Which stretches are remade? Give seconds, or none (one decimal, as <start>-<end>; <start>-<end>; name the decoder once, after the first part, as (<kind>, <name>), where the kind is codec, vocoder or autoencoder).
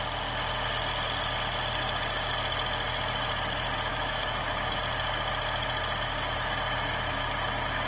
3.9-4.8 (autoencoder, DAC-VAE)